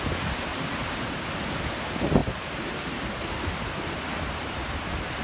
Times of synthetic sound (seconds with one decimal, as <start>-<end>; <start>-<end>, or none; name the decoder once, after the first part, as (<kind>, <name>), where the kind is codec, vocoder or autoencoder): 0.5-1.1 (vocoder, BigVGAN v2); 2.2-3.2